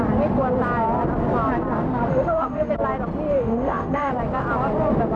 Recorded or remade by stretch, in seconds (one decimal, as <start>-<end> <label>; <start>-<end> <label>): 0.0-2.1 recorded; 2.1-2.7 remade; 2.7-3.3 recorded; 3.3-4.1 remade; 4.1-5.2 recorded